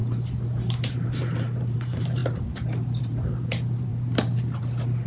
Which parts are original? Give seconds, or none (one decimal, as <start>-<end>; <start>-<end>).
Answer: 2.2-3.0; 3.9-5.1